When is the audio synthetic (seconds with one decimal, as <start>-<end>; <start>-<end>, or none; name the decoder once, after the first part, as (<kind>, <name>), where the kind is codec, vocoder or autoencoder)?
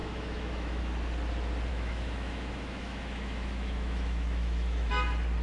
0.0-0.8 (autoencoder, DAC-VAE); 1.7-4.9